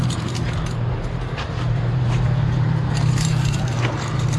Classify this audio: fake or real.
fake